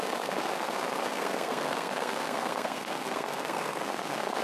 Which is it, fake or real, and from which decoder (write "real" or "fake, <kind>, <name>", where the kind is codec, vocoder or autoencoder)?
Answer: fake, codec, SNAC